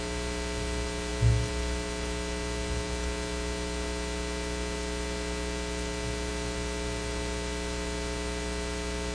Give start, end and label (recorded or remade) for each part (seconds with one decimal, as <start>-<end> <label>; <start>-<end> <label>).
0.0-9.1 recorded